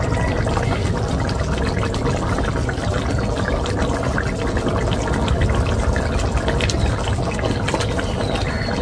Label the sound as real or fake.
real